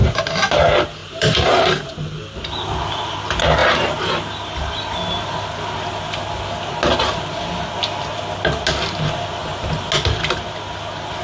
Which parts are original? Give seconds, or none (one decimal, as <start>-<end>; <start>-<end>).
0.0-1.0; 1.9-3.6; 4.1-9.4; 9.9-11.2